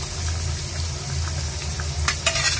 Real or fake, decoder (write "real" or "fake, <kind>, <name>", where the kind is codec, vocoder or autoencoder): real